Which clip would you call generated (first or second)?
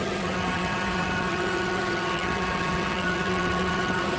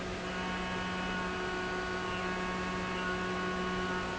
first